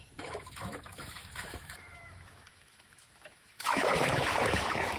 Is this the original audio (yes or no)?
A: no